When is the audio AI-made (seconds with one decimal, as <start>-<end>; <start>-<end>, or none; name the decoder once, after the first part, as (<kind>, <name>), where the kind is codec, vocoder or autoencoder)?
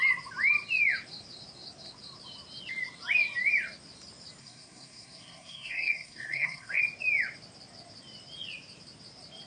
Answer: 4.4-6.8 (codec, SNAC)